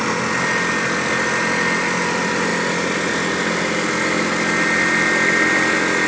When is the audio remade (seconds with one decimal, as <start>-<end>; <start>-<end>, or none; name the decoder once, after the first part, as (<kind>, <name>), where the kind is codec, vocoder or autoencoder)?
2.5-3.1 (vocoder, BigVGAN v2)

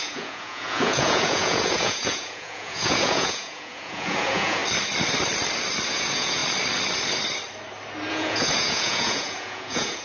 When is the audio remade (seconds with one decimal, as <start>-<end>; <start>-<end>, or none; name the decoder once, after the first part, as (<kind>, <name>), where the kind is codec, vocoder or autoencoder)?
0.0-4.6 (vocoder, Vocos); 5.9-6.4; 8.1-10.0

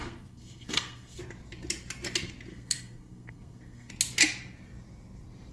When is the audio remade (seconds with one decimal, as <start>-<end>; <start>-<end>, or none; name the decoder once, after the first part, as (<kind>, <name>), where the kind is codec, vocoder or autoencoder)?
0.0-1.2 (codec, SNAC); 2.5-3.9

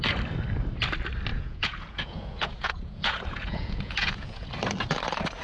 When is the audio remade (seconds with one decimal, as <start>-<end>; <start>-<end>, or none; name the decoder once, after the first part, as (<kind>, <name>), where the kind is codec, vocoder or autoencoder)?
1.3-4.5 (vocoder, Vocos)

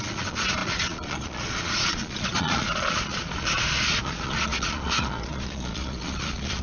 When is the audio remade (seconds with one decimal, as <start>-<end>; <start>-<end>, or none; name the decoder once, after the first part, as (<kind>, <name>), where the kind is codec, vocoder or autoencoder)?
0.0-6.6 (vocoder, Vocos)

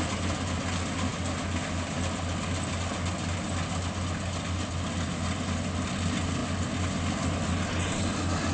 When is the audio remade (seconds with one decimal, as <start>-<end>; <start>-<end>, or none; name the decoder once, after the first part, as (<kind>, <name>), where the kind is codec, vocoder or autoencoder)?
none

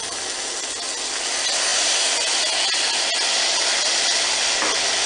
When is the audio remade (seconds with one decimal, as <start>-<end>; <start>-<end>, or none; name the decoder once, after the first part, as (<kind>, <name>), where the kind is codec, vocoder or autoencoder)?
none